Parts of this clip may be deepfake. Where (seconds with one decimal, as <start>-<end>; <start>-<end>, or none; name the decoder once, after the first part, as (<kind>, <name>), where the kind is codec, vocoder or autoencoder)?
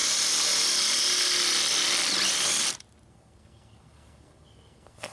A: 3.1-5.1 (codec, SNAC)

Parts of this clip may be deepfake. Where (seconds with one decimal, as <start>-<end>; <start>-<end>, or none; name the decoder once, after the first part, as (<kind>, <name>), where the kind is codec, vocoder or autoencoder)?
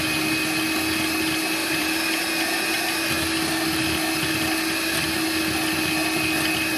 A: 1.6-2.2 (vocoder, BigVGAN v2)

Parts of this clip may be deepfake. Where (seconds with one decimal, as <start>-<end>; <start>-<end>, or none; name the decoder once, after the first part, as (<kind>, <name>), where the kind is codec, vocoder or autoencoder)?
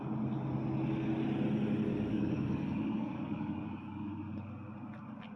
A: 1.9-4.1 (codec, DAC)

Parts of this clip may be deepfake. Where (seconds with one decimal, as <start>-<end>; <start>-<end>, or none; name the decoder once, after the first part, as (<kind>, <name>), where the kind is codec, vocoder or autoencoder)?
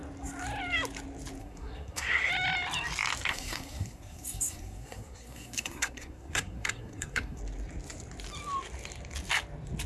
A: 1.4-2.3 (codec, SNAC); 3.3-7.4